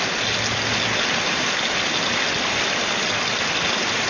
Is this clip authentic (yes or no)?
yes